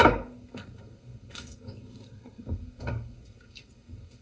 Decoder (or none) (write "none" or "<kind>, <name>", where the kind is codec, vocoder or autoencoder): codec, SNAC